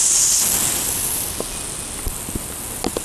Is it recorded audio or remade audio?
recorded